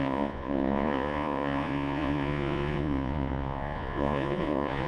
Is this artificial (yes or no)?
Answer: yes